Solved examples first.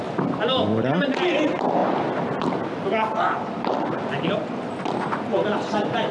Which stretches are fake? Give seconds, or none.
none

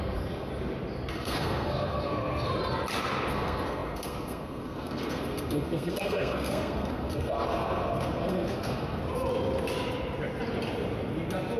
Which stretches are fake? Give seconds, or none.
0.0-0.5 (codec, SNAC); 1.1-2.5; 3.3-9.0

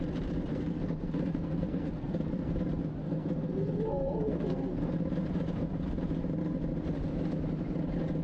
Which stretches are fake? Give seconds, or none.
0.5-2.5 (codec, SNAC); 3.0-4.9

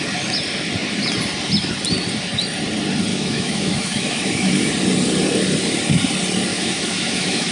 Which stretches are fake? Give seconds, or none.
3.1-4.7 (autoencoder, DAC-VAE); 6.5-7.5

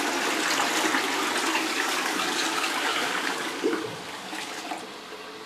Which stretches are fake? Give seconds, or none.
1.5-4.7 (codec, DAC)

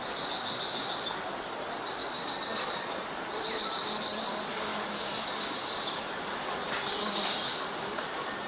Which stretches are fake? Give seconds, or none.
none

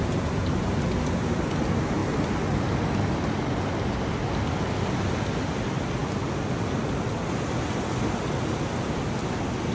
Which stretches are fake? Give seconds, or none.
none

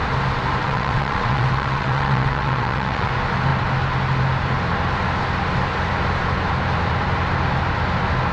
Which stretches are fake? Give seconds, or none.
0.6-3.1 (vocoder, WaveNeXt)